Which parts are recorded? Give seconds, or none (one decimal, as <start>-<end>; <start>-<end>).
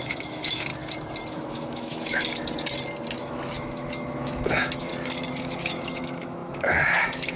0.7-1.3; 2.2-3.2; 4.9-5.4